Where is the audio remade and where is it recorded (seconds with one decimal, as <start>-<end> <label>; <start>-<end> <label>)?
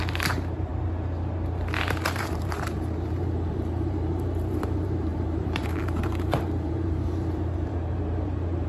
0.0-0.7 remade; 0.7-1.9 recorded; 1.9-8.7 remade